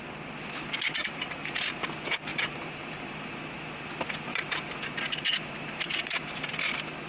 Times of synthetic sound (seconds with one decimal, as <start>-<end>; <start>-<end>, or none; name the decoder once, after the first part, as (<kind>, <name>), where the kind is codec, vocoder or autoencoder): 1.0-1.7 (vocoder, BigVGAN v2); 2.3-3.4; 4.3-6.5